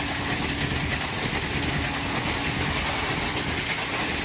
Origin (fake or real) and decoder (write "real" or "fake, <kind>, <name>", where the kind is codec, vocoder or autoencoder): real